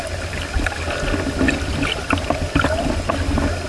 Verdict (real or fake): real